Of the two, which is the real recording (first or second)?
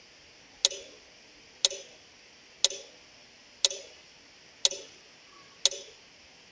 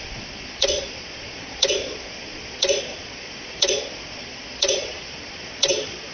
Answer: first